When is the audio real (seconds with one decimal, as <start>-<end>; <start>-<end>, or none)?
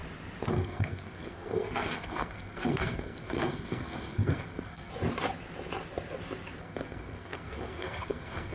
0.0-0.5; 4.9-6.6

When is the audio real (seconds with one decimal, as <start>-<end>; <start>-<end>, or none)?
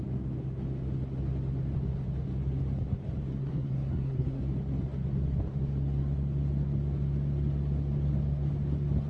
0.0-3.4; 4.4-9.1